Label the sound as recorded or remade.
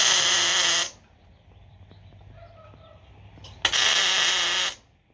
recorded